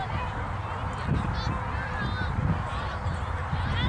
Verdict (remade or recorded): recorded